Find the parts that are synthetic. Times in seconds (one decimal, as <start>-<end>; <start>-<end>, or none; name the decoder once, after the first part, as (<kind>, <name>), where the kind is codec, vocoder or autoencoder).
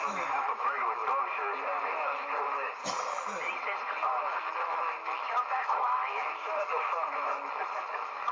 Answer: 0.0-1.0 (autoencoder, DAC-VAE); 1.8-2.8; 4.1-8.3